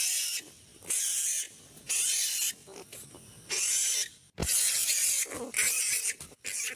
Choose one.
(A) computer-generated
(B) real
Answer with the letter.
B